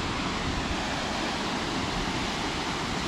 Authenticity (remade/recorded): remade